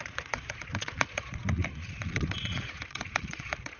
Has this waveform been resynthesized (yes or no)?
yes